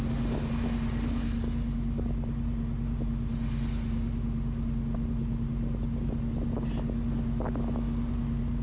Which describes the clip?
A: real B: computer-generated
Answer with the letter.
A